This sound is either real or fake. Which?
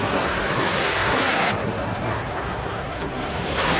fake